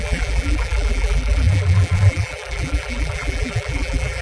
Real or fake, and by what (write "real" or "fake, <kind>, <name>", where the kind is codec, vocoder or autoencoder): fake, vocoder, BigVGAN v2